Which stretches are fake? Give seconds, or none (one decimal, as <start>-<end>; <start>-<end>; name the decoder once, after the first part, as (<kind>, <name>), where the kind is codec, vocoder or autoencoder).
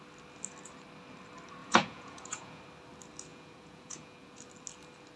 1.6-2.6 (vocoder, Vocos); 3.3-4.4